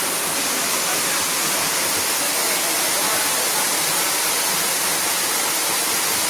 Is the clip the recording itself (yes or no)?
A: yes